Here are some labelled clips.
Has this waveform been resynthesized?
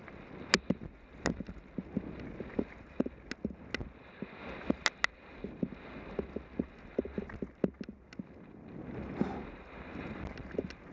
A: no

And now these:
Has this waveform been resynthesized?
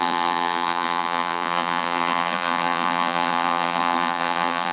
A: yes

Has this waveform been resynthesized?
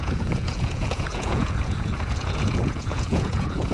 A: yes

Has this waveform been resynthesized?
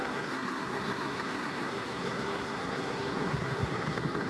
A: yes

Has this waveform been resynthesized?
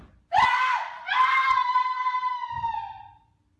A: no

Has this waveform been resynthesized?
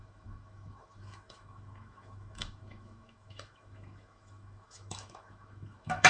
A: yes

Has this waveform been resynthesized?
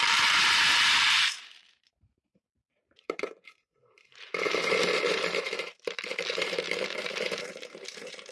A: yes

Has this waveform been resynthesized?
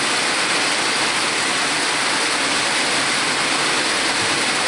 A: no